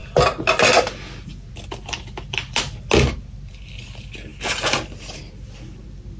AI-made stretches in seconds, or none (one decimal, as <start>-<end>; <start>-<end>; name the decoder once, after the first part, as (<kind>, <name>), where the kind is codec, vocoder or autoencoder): none